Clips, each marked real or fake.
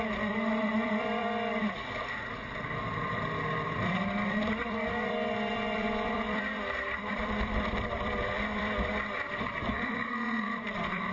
fake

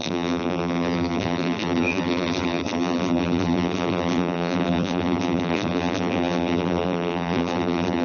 fake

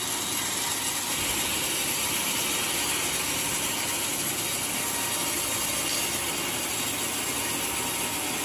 real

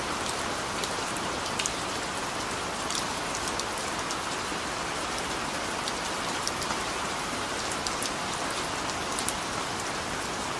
real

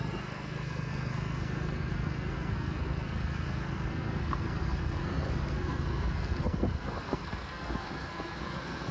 fake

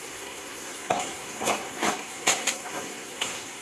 fake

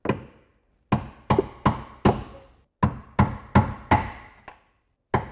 real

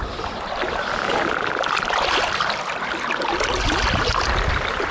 fake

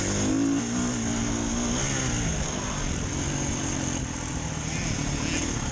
real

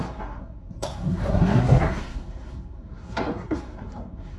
fake